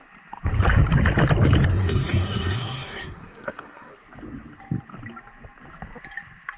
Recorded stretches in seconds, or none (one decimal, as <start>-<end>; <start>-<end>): 0.0-1.7; 3.9-6.6